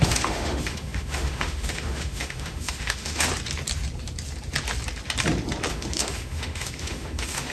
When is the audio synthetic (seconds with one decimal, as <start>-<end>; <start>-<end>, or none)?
0.0-3.3; 5.7-7.5